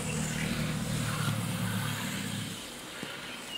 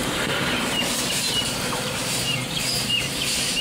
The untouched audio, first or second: first